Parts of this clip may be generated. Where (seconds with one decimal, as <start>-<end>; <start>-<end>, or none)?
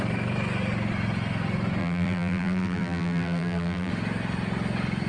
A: 1.8-3.9